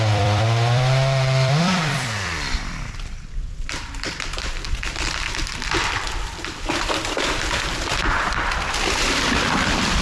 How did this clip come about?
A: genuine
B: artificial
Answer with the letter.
B